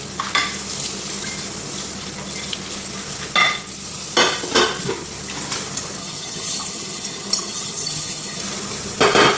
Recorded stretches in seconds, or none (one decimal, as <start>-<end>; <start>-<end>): 0.0-6.0; 8.4-9.4